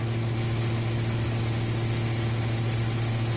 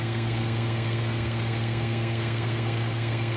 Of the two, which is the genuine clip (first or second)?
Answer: first